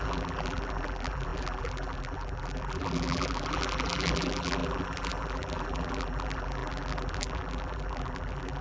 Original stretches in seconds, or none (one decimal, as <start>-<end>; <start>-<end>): none